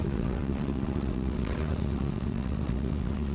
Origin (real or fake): fake